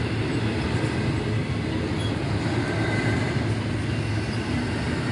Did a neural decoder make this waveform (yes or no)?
no